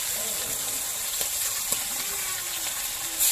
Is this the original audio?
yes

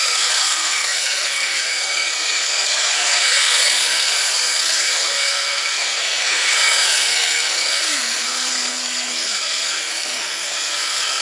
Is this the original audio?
no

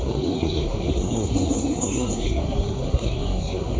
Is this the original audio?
no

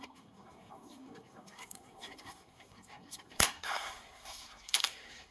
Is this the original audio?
no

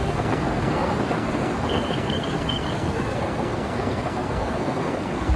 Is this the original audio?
no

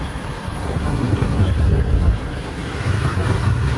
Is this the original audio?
no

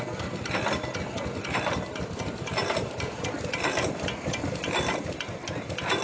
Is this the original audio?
yes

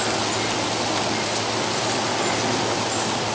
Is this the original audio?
yes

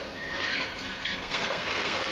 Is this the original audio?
no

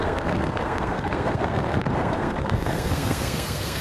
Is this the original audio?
no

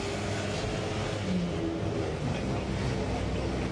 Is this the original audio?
yes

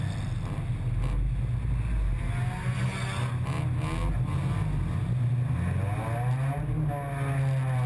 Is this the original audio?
yes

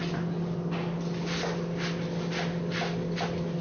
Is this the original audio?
yes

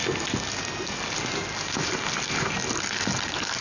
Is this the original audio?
yes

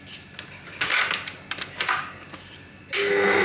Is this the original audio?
yes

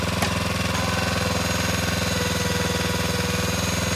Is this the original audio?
yes